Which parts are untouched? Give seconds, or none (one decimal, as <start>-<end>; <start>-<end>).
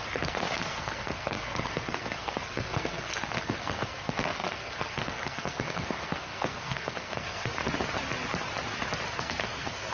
7.6-9.1